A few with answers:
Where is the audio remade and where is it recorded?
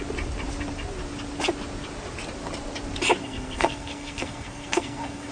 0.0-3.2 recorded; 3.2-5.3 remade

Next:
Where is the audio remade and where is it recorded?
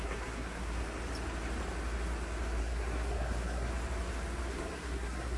0.0-0.8 remade; 0.8-2.6 recorded; 2.6-3.7 remade; 3.7-4.5 recorded; 4.5-5.4 remade